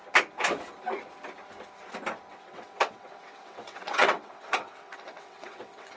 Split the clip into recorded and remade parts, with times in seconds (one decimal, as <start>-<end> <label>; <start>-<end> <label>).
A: 0.0-2.3 recorded; 2.3-6.0 remade